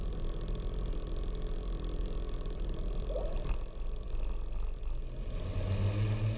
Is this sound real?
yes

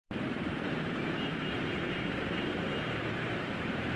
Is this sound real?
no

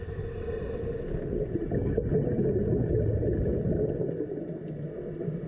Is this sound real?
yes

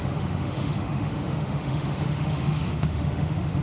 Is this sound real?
no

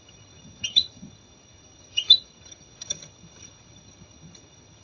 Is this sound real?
no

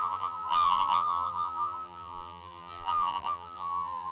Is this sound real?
no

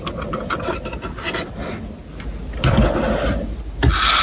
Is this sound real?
yes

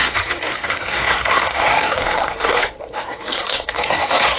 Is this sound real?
no